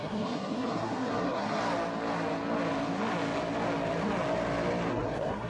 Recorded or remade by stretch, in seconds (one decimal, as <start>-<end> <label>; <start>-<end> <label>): 0.0-1.6 remade; 1.6-4.9 recorded; 4.9-5.5 remade